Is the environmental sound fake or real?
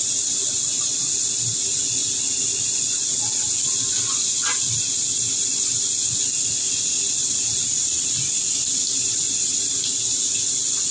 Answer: real